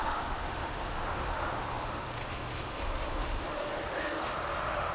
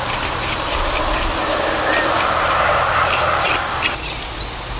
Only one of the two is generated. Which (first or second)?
first